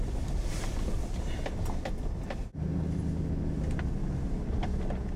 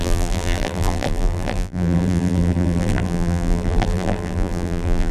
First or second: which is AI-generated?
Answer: second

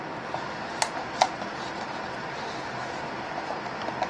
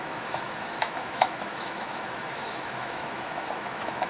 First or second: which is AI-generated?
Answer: second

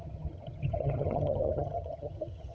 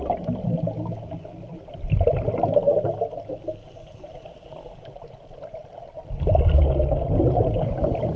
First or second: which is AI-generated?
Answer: first